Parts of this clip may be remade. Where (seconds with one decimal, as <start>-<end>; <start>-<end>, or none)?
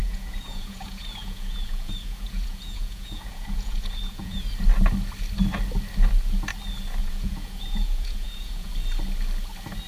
0.0-4.4; 7.0-8.7